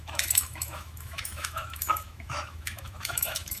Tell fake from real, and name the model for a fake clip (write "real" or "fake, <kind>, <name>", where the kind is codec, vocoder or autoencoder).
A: fake, autoencoder, DAC-VAE